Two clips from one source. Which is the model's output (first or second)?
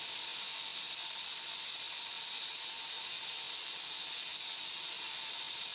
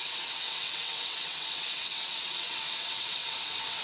second